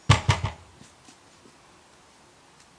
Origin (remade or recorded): recorded